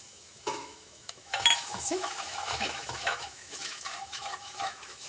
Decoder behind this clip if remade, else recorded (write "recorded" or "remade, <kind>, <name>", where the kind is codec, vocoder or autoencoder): remade, autoencoder, DAC-VAE